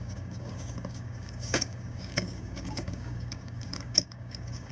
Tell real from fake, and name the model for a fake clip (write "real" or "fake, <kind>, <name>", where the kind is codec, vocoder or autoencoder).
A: fake, codec, DAC